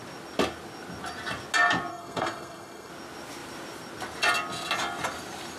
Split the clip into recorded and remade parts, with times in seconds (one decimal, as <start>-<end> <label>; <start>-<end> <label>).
0.0-1.9 recorded; 1.9-2.9 remade; 2.9-5.6 recorded